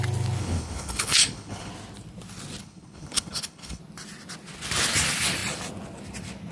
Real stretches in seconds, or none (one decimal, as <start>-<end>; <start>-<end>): 0.0-0.4; 1.7-2.6; 3.8-6.5